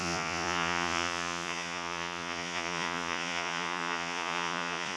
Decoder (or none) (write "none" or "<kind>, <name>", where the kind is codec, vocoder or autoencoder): vocoder, Vocos